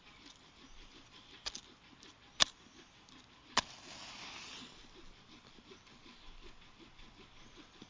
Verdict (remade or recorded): recorded